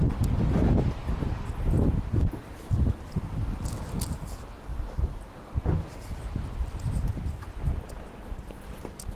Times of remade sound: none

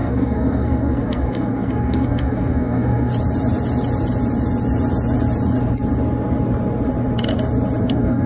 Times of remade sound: 0.0-3.1 (codec, SNAC); 7.8-8.3

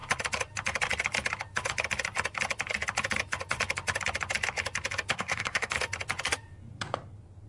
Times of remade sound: 5.1-5.7 (codec, SNAC)

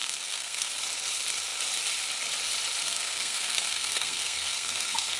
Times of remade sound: 0.0-0.7 (codec, SNAC); 2.8-5.2

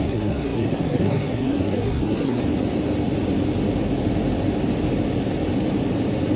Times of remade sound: 0.0-2.4 (codec, SNAC)

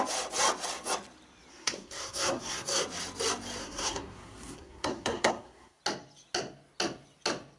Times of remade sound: 1.5-2.8 (codec, SNAC); 3.6-5.8

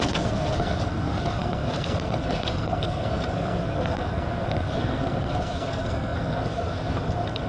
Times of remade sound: 0.0-7.5 (codec, SNAC)